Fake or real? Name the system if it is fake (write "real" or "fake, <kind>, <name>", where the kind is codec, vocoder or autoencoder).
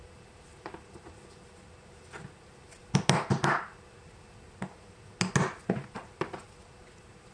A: real